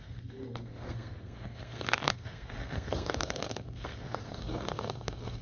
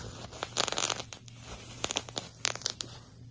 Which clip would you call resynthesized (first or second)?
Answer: first